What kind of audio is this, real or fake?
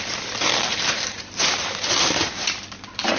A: fake